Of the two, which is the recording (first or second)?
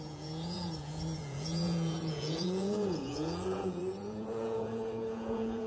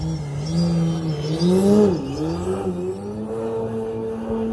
second